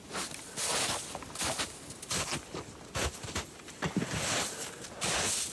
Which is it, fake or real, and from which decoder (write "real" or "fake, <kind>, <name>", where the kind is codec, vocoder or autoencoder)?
real